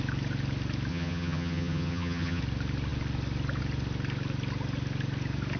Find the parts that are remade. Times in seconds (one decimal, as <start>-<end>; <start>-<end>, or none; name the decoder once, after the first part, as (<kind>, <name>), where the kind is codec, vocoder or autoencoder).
0.9-2.4 (vocoder, HiFi-GAN)